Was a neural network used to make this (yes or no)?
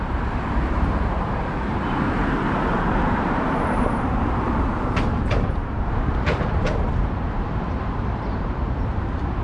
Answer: yes